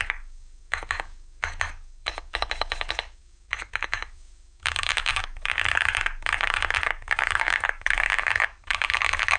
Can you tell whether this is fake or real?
fake